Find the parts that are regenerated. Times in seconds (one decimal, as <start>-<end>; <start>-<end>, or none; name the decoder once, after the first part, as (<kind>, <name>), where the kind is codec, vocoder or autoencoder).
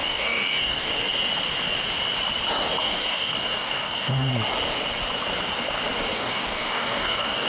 0.0-0.9 (codec, DAC); 2.8-4.3; 6.1-7.5